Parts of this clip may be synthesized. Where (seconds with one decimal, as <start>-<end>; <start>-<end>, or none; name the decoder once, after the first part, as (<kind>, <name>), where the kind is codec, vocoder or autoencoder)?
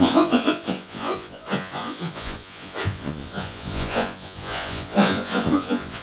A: 0.0-6.0 (vocoder, Vocos)